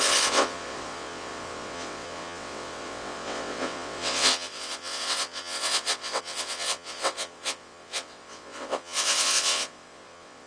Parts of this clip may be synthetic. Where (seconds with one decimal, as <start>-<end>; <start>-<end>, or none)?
0.0-10.5